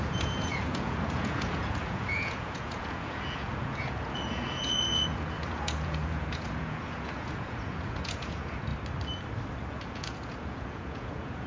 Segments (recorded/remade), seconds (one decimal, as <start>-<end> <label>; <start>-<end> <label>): 0.0-8.7 remade; 8.7-9.7 recorded; 9.7-11.5 remade